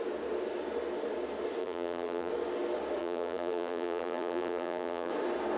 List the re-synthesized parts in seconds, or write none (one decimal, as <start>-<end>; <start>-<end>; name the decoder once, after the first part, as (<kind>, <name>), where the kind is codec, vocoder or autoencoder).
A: 1.6-2.3 (vocoder, BigVGAN v2); 3.0-5.1